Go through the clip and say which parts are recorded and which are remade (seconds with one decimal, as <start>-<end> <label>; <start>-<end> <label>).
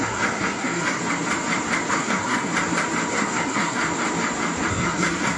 0.0-1.0 remade; 1.0-1.9 recorded; 1.9-2.5 remade; 2.5-3.1 recorded; 3.1-3.8 remade; 3.8-4.7 recorded; 4.7-5.4 remade